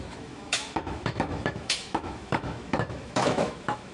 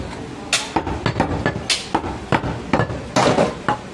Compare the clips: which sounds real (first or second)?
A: second